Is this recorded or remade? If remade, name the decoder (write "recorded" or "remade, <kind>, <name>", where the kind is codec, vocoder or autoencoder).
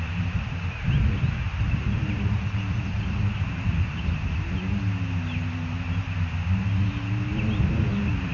recorded